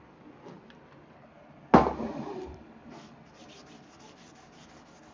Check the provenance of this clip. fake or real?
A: real